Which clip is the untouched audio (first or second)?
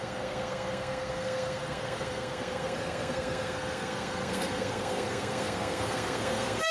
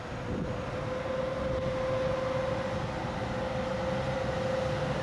second